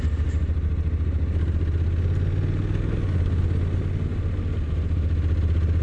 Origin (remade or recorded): recorded